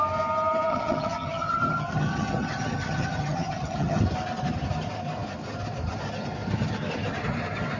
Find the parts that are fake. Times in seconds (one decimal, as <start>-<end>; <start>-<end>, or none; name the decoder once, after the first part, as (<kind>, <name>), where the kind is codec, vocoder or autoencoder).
0.7-4.0 (vocoder, HiFi-GAN)